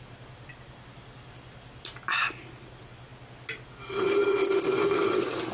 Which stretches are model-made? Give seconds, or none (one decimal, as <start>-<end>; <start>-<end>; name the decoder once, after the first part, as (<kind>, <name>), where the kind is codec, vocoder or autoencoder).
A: none